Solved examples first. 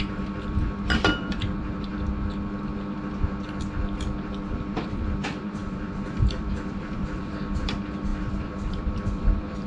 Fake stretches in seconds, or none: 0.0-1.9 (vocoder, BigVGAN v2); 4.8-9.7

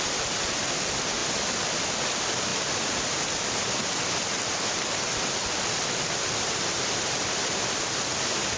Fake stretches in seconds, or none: none

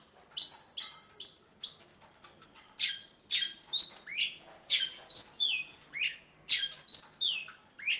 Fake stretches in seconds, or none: 4.1-6.0 (vocoder, Vocos)